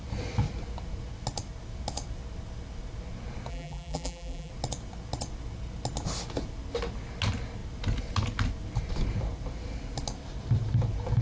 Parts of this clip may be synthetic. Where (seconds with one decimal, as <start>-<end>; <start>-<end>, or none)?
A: 3.5-4.5